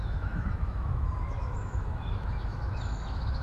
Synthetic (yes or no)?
yes